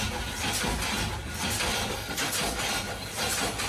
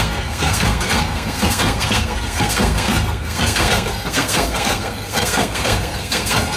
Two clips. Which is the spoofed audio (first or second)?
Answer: second